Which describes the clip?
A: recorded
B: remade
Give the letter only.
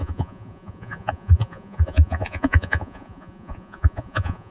B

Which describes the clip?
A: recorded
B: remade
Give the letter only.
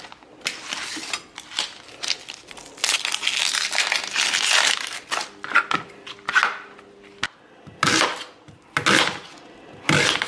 A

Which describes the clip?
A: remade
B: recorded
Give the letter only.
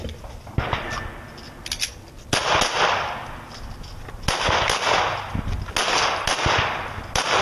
B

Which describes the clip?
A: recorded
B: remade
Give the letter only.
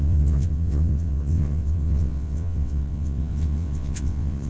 B